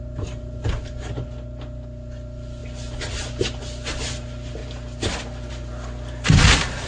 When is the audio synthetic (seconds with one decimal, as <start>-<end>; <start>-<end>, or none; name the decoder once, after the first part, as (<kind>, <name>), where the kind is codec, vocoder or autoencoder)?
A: none